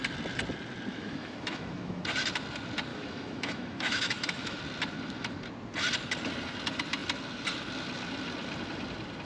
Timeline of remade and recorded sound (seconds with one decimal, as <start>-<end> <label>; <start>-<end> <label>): 0.0-0.9 recorded; 0.9-2.0 remade; 2.0-2.9 recorded; 2.9-4.6 remade; 4.6-9.3 recorded